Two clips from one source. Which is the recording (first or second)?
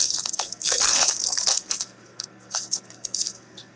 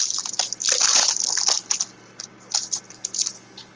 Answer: second